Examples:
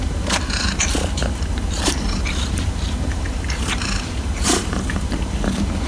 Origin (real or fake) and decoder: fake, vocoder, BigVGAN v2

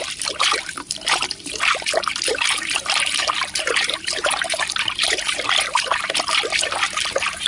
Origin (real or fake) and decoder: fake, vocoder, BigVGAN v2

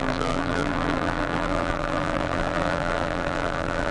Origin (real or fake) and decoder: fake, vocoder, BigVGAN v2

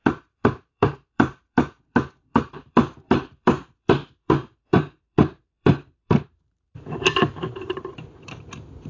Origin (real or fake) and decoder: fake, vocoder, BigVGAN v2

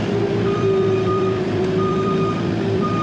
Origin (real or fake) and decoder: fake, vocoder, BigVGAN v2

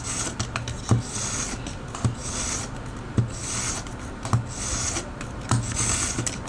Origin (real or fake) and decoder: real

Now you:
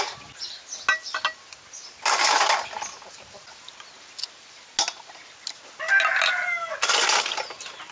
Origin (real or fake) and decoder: real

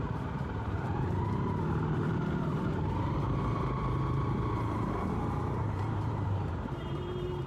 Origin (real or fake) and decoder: fake, vocoder, BigVGAN v2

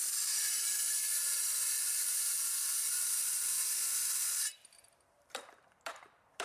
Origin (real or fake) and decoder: fake, vocoder, BigVGAN v2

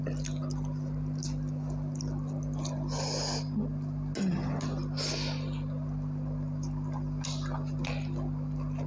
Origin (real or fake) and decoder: real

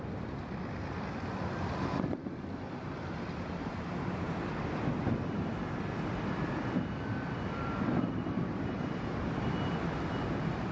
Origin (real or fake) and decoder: fake, vocoder, BigVGAN v2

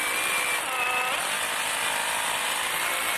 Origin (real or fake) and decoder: real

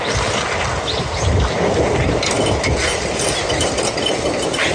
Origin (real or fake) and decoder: real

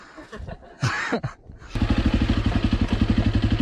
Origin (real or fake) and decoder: real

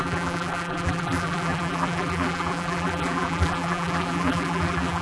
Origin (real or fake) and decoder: fake, vocoder, BigVGAN v2